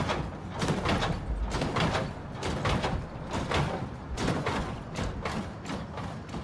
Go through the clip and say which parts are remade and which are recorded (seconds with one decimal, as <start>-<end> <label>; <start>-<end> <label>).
0.0-4.1 recorded; 4.1-4.9 remade; 4.9-6.4 recorded